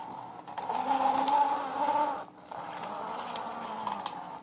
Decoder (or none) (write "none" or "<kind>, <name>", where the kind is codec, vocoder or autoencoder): none